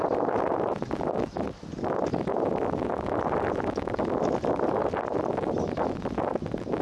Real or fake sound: real